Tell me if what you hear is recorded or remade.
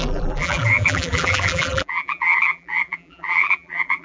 remade